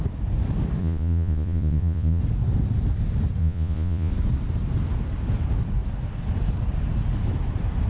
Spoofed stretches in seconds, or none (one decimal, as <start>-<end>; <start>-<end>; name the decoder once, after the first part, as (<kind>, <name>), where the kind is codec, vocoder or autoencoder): 0.8-2.2 (vocoder, Vocos); 3.4-4.1